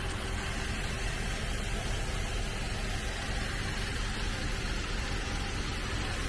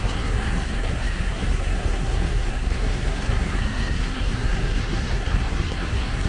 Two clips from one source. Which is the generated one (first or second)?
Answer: second